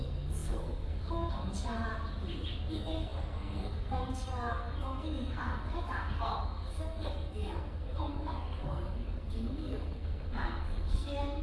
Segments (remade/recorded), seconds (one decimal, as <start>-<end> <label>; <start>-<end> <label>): 0.0-1.9 remade; 1.9-2.7 recorded; 2.7-11.4 remade